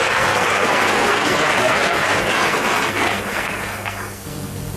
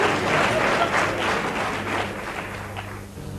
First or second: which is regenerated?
first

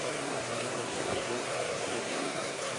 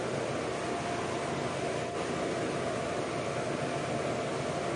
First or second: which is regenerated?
first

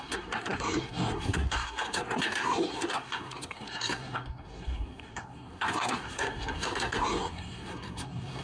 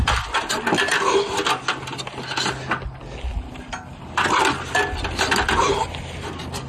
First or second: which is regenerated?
first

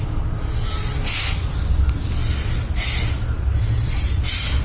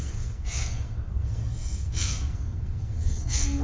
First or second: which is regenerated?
second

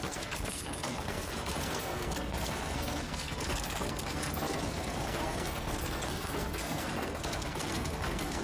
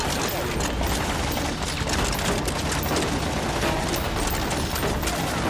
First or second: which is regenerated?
first